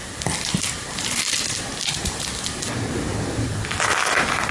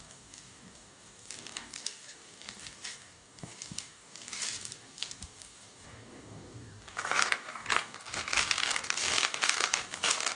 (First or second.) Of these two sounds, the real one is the first